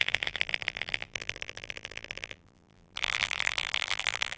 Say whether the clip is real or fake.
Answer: fake